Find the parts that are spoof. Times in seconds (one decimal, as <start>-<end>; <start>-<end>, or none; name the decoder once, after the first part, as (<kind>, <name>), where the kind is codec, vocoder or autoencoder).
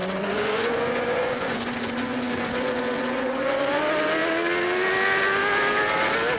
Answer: 0.0-3.8 (vocoder, Vocos)